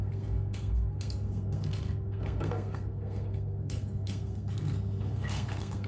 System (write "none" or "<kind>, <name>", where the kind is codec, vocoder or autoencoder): codec, SNAC